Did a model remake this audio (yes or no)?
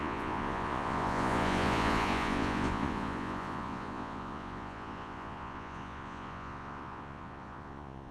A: yes